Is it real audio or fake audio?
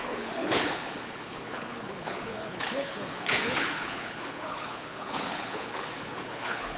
fake